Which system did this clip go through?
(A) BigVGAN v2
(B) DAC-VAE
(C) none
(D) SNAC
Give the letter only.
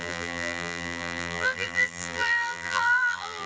A